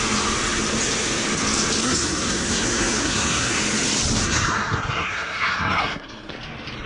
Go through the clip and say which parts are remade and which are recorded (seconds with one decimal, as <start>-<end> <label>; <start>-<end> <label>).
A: 0.0-1.8 recorded; 1.8-3.6 remade; 3.6-4.2 recorded; 4.2-6.3 remade; 6.3-6.9 recorded